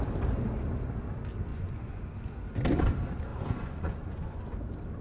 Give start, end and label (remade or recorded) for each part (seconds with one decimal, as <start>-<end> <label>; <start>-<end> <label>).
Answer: 0.0-1.5 recorded; 1.5-2.0 remade; 2.0-3.3 recorded; 3.3-4.4 remade; 4.4-5.0 recorded